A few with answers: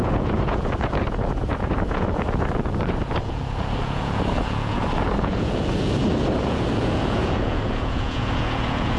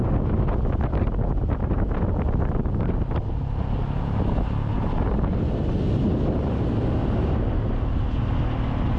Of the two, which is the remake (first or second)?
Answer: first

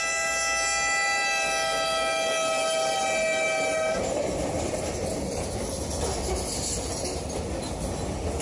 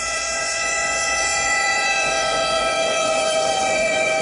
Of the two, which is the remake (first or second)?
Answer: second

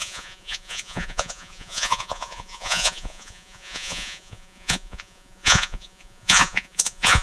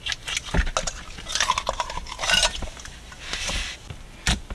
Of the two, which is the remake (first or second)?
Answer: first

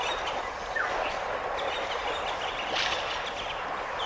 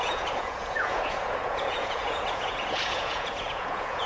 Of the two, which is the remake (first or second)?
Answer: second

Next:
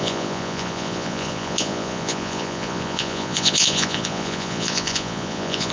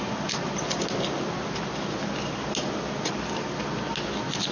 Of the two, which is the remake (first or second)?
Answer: first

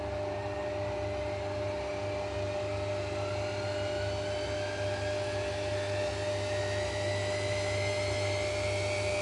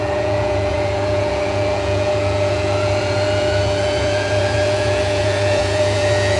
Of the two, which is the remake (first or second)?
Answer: second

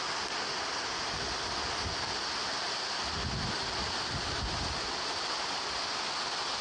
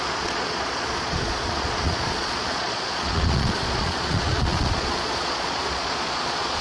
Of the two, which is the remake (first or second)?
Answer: second